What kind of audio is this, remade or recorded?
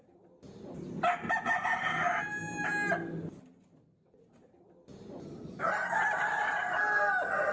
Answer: recorded